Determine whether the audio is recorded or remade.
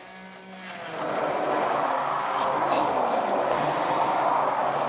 recorded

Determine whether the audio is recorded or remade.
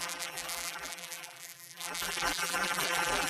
remade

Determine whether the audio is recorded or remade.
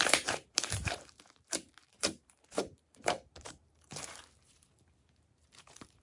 remade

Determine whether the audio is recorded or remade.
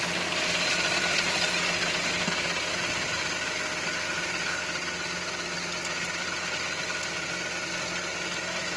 recorded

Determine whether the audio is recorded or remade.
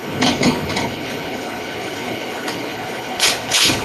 remade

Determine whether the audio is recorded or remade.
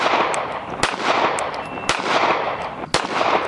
recorded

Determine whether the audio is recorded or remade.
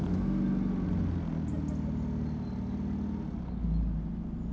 recorded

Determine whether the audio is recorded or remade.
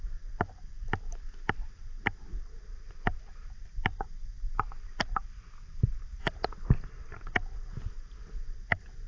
recorded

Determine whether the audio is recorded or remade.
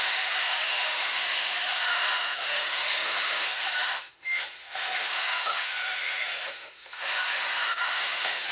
remade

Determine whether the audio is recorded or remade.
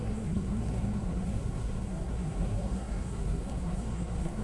remade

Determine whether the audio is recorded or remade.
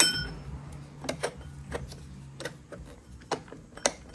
recorded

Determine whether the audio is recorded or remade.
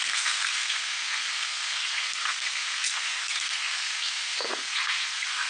remade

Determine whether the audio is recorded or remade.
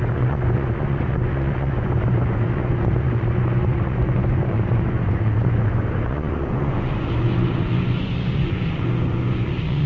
remade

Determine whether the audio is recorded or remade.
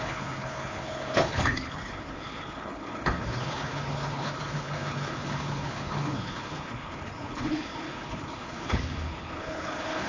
remade